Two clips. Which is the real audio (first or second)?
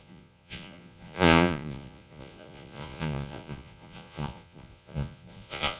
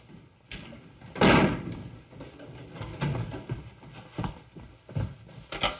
second